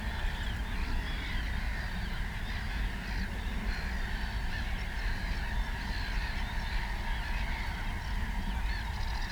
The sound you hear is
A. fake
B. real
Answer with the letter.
B